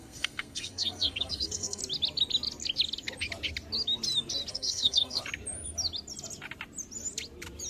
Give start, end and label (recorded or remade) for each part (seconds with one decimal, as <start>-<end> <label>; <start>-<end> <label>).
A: 0.0-1.8 remade; 1.8-4.5 recorded; 4.5-5.2 remade; 5.2-7.7 recorded

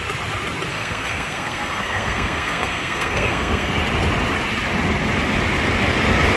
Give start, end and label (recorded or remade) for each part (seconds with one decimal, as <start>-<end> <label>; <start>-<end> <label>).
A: 0.0-0.7 recorded; 0.7-3.7 remade; 3.7-6.4 recorded